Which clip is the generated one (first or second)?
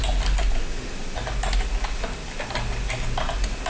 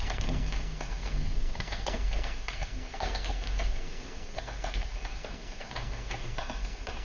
second